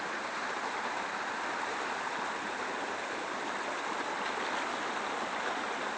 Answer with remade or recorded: recorded